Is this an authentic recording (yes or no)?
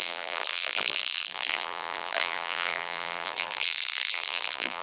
no